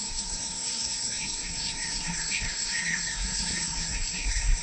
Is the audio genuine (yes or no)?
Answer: no